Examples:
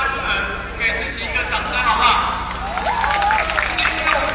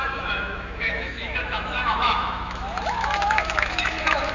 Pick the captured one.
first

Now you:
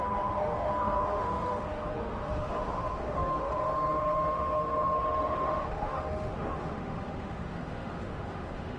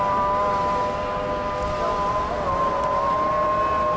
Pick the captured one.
second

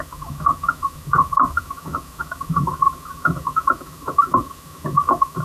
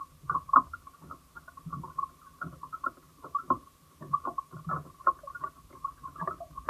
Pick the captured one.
second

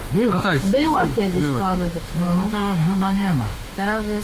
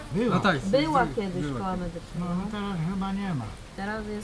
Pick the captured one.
second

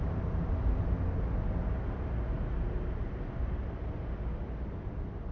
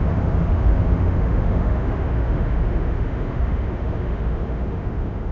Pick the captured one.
first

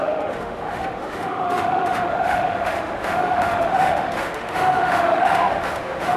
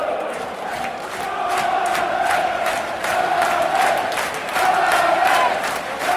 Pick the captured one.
second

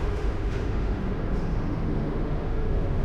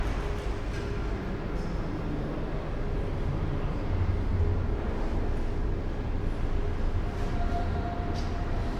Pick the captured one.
second